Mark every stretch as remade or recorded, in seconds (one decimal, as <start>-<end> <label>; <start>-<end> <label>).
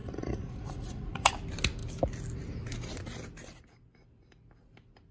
0.0-1.3 remade; 1.3-5.1 recorded